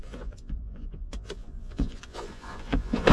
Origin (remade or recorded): remade